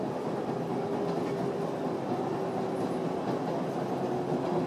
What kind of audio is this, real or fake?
real